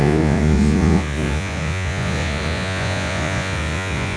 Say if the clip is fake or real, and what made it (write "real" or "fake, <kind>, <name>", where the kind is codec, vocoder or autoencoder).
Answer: fake, vocoder, Vocos